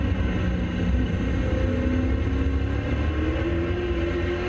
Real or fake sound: real